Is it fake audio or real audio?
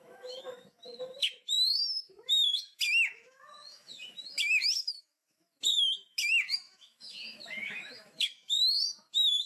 fake